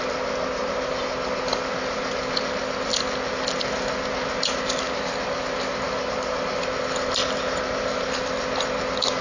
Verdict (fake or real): real